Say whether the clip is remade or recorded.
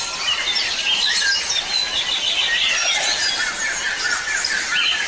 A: recorded